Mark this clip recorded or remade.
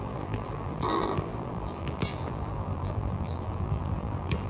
remade